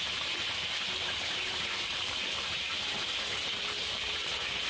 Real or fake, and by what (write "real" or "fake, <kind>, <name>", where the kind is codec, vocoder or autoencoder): fake, vocoder, BigVGAN v2